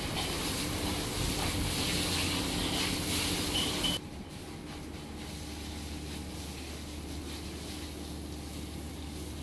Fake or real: real